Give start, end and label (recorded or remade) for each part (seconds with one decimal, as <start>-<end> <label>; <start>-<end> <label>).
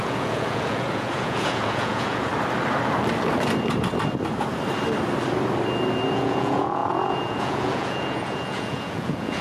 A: 0.0-2.3 remade; 2.3-6.1 recorded; 6.1-9.4 remade